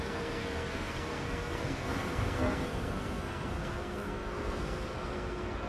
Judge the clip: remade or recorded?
remade